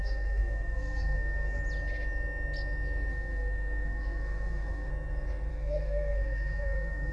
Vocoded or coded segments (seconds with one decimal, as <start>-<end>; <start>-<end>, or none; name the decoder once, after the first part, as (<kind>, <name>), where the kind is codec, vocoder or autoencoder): 0.0-1.6 (codec, SNAC); 3.1-4.9; 5.5-7.1